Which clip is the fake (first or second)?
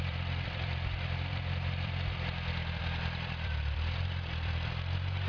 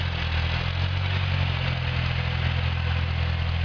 first